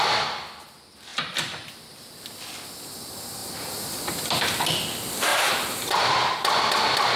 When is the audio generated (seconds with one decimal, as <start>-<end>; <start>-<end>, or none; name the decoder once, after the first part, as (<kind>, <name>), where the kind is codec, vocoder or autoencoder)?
1.1-1.7 (vocoder, BigVGAN v2); 3.4-4.1; 5.3-6.1